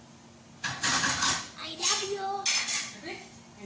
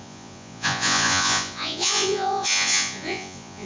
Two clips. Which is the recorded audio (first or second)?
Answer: first